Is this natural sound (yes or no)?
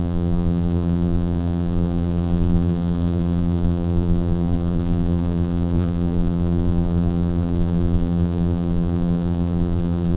no